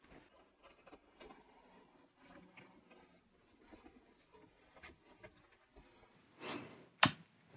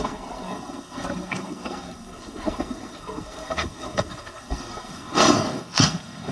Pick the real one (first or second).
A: first